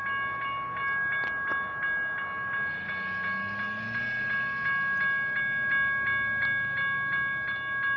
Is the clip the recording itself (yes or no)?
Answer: yes